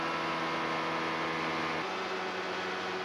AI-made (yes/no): no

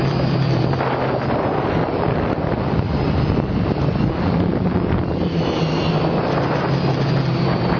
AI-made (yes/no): yes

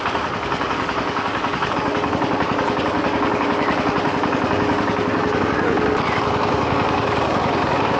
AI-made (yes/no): yes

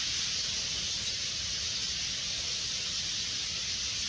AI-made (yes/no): no